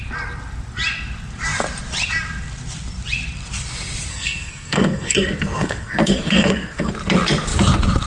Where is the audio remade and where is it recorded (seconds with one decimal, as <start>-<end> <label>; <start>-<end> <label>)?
0.0-4.1 recorded; 4.1-6.9 remade; 6.9-8.1 recorded